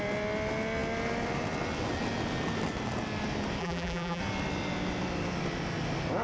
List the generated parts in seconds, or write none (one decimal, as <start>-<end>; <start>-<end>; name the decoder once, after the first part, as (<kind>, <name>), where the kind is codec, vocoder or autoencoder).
3.6-4.2 (vocoder, BigVGAN v2)